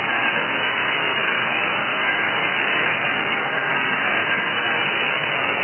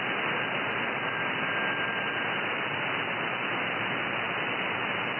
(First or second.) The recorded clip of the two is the second